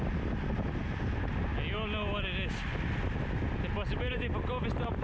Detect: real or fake real